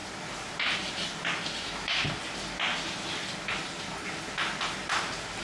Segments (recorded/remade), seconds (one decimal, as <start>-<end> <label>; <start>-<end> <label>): 0.0-1.6 recorded; 1.6-2.0 remade; 2.0-5.4 recorded

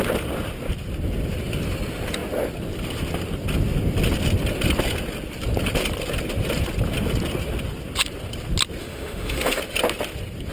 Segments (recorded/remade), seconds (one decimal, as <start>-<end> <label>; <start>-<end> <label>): 0.0-8.8 recorded; 8.8-9.6 remade; 9.6-10.5 recorded